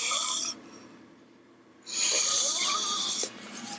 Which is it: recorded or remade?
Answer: remade